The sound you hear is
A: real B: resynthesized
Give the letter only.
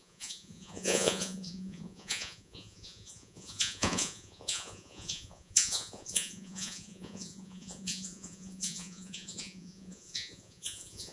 B